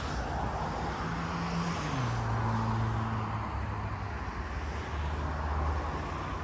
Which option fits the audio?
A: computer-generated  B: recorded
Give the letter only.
B